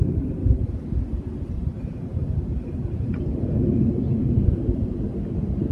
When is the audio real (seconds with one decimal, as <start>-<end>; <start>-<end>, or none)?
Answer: 0.4-1.5